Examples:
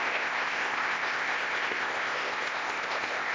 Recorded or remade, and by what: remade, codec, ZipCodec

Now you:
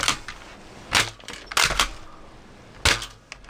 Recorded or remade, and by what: recorded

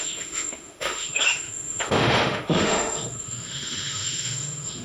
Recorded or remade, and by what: remade, autoencoder, DAC-VAE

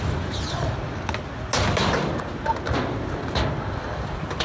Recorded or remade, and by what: recorded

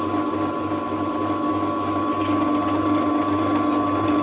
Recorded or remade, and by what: recorded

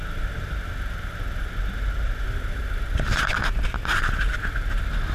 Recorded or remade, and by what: recorded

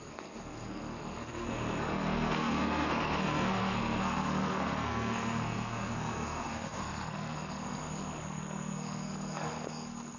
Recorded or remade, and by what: remade, codec, SNAC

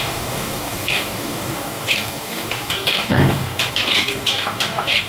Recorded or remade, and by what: remade, codec, DAC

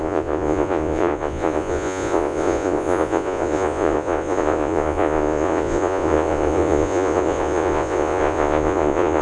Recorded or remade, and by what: remade, vocoder, Vocos